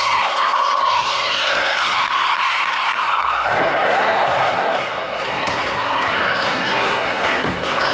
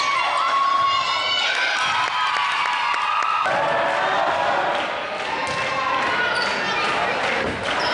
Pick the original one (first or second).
second